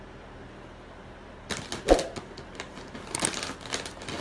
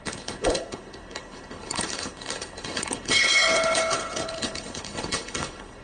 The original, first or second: first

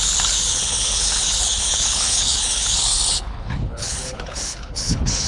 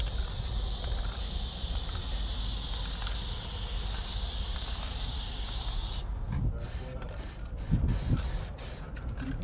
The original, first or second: second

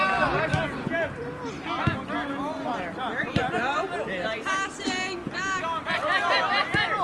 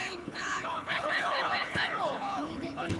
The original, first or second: first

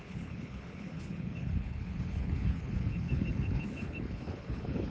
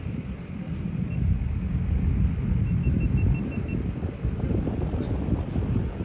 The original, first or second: second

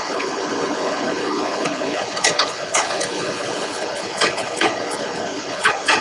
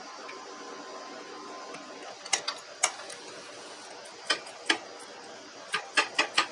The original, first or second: second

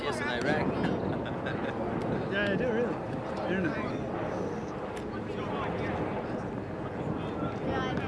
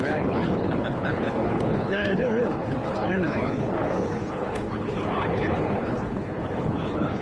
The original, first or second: first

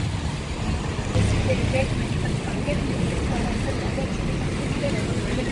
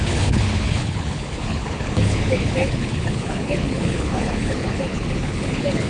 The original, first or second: first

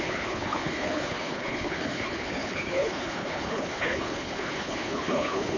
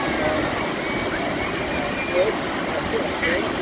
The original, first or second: second